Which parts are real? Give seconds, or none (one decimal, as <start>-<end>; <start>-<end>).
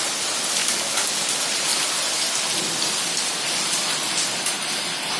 0.0-0.6; 1.1-5.2